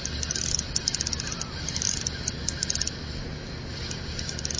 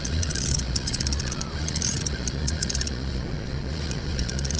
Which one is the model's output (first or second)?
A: second